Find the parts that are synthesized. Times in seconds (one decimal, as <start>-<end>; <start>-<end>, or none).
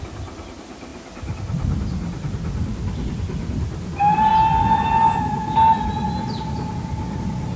none